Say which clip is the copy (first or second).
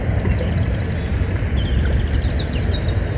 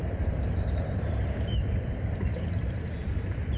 second